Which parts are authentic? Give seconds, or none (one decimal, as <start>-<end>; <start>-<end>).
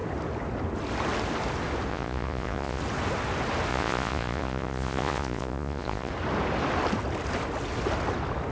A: 0.0-1.9; 2.8-3.7; 6.1-8.5